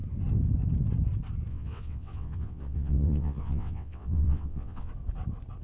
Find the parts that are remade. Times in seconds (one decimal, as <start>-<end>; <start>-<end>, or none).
1.5-4.9